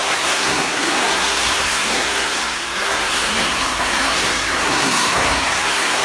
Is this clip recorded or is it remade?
remade